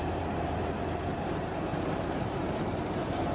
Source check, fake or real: fake